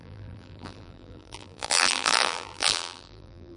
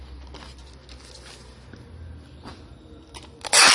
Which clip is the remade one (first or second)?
first